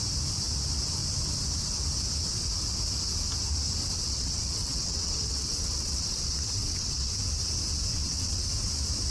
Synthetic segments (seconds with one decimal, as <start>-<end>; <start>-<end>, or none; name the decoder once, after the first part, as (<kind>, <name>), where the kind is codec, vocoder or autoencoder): 3.8-7.1 (vocoder, WaveNeXt); 7.9-8.4